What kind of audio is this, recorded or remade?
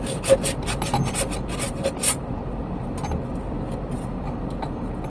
recorded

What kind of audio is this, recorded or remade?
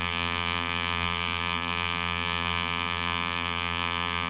remade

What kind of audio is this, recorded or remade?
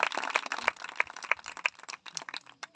recorded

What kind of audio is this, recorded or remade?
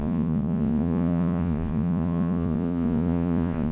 remade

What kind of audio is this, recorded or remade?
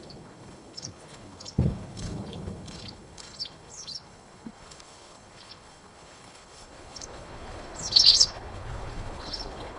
remade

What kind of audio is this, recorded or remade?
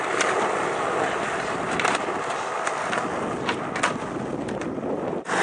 recorded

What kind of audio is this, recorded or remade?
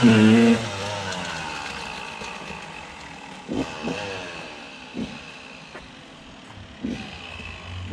recorded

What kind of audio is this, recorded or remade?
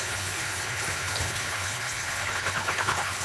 remade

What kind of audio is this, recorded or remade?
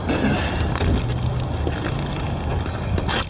recorded